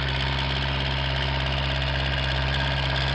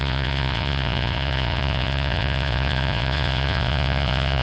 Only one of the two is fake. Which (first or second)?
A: second